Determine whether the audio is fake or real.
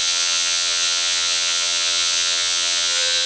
fake